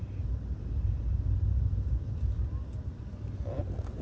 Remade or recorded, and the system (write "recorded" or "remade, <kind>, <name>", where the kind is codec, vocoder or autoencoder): recorded